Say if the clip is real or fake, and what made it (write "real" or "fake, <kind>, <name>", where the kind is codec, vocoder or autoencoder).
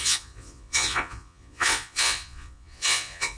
fake, vocoder, Vocos